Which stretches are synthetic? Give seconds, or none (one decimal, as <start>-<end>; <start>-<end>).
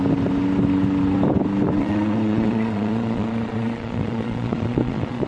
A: 1.8-5.3